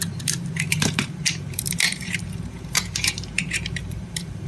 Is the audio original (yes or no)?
no